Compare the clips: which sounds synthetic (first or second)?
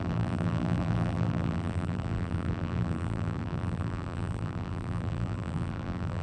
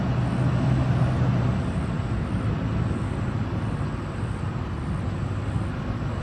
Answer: first